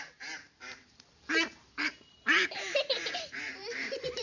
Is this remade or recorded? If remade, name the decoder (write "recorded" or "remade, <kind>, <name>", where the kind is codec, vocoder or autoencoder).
remade, vocoder, BigVGAN v2